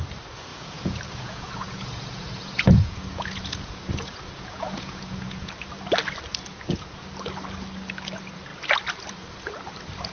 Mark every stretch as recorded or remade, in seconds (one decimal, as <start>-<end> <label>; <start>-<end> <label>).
0.0-0.5 recorded; 0.5-5.5 remade; 5.5-6.5 recorded; 6.5-7.0 remade; 7.0-10.1 recorded